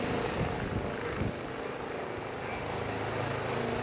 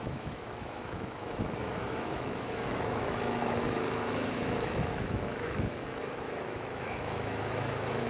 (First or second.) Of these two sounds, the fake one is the second